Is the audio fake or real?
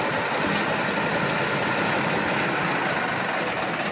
real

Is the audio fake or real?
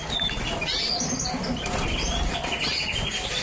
real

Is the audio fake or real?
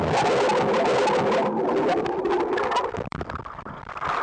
real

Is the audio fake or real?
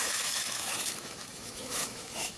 fake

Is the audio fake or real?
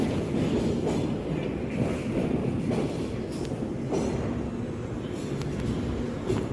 real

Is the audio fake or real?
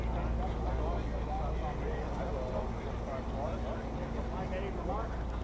real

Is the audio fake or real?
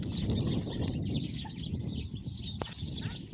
real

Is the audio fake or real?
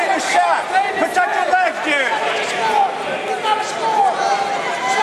real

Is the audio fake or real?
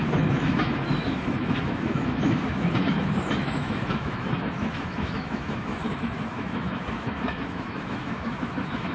fake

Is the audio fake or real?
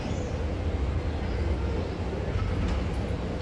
real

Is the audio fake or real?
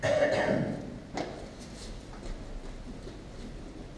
real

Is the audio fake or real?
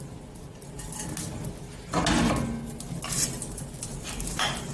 real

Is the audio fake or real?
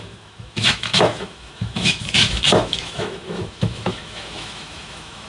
fake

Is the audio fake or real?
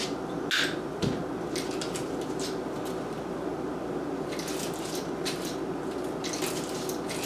real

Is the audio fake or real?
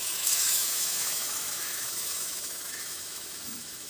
fake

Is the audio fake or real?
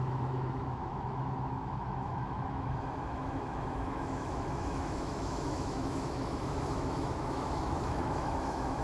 fake